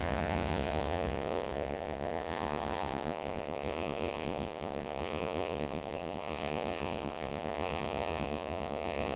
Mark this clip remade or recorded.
remade